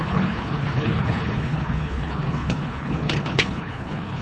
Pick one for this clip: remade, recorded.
remade